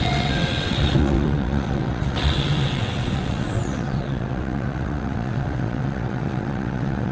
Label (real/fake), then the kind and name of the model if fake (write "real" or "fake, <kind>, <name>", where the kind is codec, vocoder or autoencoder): fake, vocoder, WaveNeXt